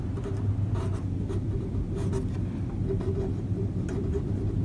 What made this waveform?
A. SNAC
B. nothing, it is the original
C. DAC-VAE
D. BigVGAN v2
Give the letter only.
B